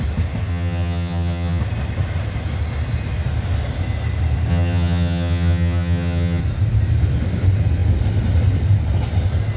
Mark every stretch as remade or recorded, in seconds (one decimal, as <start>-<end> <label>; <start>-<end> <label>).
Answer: 0.0-0.5 recorded; 0.5-1.6 remade; 1.6-4.5 recorded; 4.5-6.4 remade; 6.4-9.6 recorded